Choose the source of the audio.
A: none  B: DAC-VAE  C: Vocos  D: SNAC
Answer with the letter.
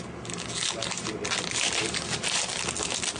A